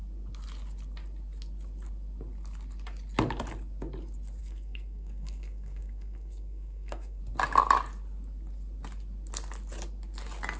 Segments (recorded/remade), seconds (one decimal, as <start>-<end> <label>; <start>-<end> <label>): 0.0-4.4 recorded; 4.4-7.2 remade; 7.2-10.6 recorded